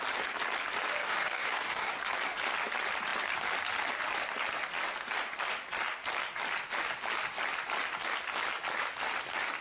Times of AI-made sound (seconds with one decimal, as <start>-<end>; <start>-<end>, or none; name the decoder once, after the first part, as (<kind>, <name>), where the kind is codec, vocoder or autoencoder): 1.0-1.9 (codec, DAC)